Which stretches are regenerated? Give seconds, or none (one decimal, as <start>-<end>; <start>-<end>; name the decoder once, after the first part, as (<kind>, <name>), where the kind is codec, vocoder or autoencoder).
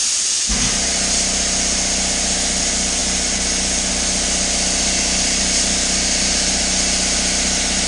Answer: none